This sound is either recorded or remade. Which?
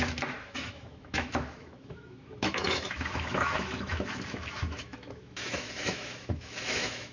remade